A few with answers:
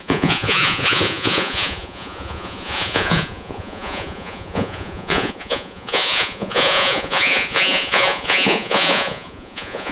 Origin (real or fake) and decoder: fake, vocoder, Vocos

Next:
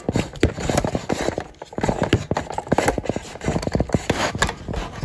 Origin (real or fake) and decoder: real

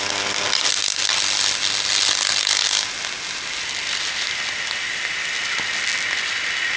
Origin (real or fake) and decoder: real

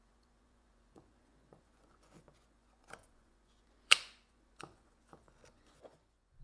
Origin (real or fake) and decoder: fake, vocoder, Vocos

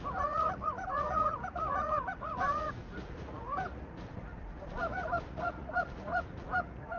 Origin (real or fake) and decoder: fake, vocoder, Vocos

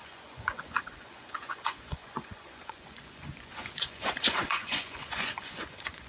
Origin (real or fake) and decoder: fake, vocoder, Vocos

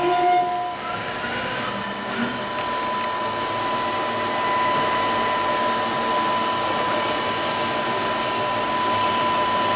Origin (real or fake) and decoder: real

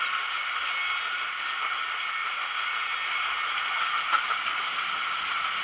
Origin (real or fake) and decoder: real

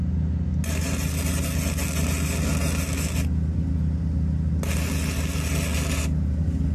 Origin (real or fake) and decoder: real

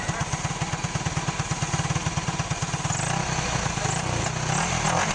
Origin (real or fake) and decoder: real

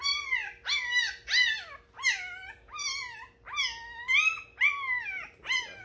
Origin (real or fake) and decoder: real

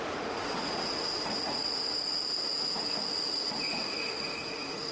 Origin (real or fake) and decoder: fake, vocoder, Vocos